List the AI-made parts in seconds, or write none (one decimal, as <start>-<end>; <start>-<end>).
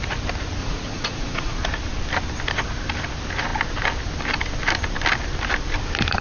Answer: 0.6-1.6